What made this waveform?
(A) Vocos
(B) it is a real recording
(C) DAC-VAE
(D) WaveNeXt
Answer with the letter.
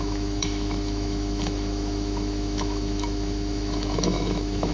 C